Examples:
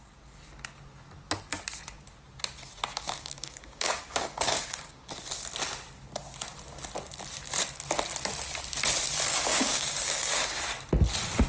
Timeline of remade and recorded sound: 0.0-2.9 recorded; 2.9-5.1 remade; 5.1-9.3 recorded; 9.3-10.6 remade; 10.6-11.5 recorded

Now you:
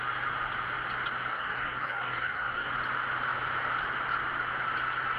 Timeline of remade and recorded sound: 0.0-1.3 recorded; 1.3-2.7 remade; 2.7-5.2 recorded

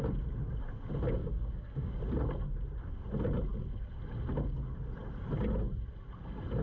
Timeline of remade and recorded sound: 0.0-1.2 recorded; 1.2-2.0 remade; 2.0-6.6 recorded

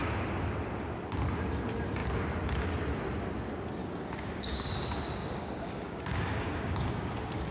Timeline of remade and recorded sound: 0.0-3.8 recorded; 3.8-4.7 remade; 4.7-5.2 recorded; 5.2-7.1 remade; 7.1-7.5 recorded